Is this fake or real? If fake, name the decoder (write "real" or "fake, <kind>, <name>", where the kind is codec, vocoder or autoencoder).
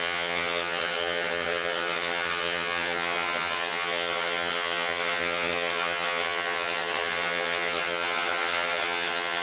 fake, vocoder, HiFi-GAN